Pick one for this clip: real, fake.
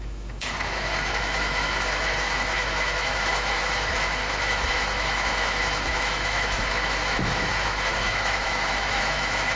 fake